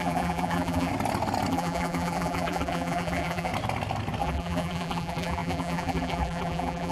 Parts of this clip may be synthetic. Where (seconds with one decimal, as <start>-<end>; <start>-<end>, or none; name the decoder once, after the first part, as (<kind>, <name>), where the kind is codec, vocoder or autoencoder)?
0.0-0.9 (vocoder, BigVGAN v2); 1.5-3.5; 4.2-6.9